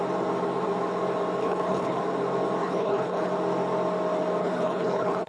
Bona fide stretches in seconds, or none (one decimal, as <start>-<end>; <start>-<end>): 0.0-1.4; 2.0-2.6; 3.3-4.4